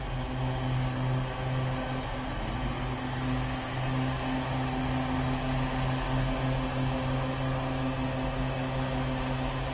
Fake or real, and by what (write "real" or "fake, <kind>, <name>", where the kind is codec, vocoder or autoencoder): real